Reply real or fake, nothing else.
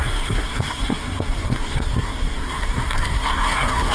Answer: fake